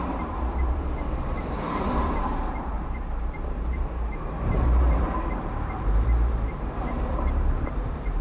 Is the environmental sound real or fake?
fake